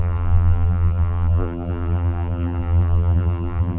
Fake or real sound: fake